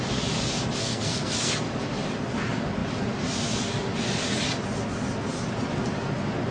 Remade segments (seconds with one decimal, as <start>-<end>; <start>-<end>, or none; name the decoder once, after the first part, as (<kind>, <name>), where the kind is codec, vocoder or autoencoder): 0.8-1.5 (codec, SNAC)